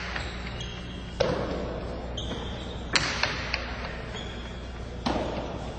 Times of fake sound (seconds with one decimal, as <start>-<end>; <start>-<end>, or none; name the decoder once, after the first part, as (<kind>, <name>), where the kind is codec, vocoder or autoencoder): none